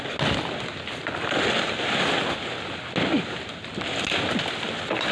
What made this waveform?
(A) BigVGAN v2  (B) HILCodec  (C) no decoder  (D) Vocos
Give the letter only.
C